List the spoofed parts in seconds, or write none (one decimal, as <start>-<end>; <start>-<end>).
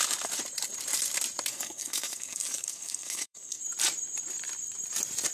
1.5-3.6